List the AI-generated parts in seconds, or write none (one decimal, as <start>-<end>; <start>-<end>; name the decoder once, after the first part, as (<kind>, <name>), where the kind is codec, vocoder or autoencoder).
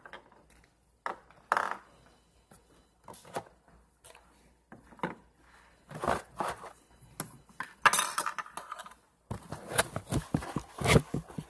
none